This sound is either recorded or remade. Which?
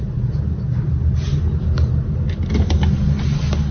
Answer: recorded